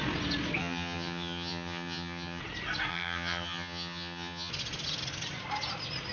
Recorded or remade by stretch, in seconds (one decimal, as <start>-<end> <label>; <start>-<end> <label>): 0.0-0.6 recorded; 0.6-2.4 remade; 2.4-2.9 recorded; 2.9-4.5 remade; 4.5-6.1 recorded